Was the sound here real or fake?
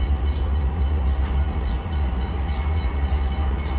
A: fake